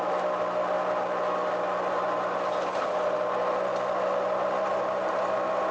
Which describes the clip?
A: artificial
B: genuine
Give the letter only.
B